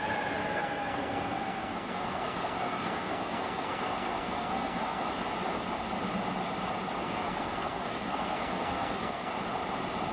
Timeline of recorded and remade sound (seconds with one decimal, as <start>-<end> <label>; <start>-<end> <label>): 0.0-0.4 recorded; 0.4-5.0 remade; 5.0-7.0 recorded; 7.0-9.3 remade; 9.3-10.1 recorded